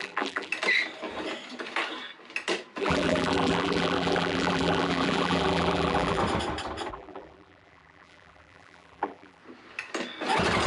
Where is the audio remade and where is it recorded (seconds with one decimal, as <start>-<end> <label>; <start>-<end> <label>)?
0.0-0.5 remade; 0.5-2.8 recorded; 2.8-6.2 remade; 6.2-6.9 recorded; 6.9-9.4 remade; 9.4-10.7 recorded